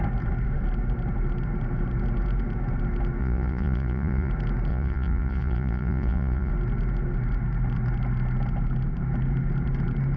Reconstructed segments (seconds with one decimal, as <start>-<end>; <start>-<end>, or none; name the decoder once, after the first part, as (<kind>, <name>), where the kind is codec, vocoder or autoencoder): 3.2-4.3 (vocoder, Vocos); 4.7-6.5